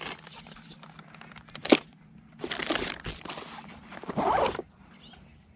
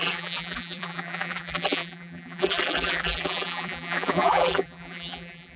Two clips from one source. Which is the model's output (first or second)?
second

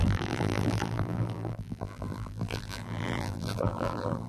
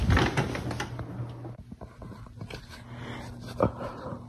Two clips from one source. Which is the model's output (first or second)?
first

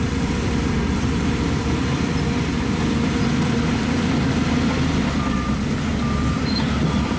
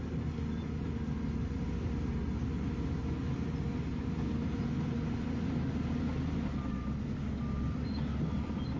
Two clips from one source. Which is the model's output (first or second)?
first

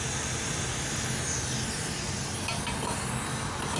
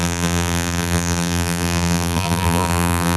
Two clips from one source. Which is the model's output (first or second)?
second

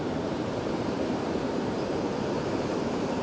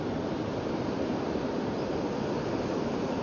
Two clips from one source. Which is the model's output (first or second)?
first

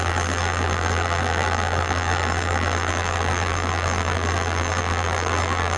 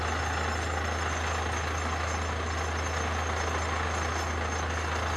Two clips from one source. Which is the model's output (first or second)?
first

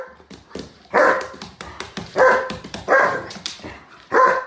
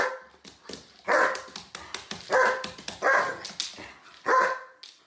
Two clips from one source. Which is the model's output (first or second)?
first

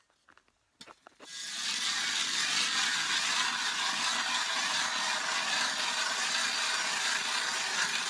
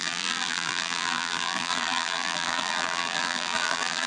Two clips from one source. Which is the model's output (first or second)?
second